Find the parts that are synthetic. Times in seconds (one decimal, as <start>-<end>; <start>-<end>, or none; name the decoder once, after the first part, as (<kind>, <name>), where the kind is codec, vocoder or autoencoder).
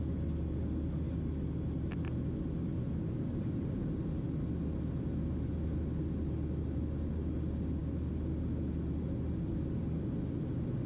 none